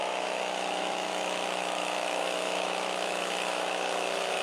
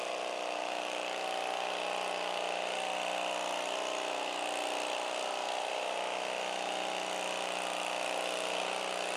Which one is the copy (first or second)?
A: first